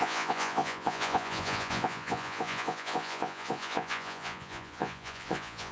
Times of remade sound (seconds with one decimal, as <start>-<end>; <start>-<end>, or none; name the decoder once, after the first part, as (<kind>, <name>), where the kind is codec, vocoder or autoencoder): 0.0-5.7 (vocoder, Vocos)